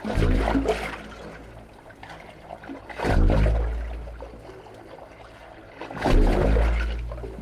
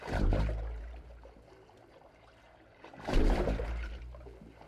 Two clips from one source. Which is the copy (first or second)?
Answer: second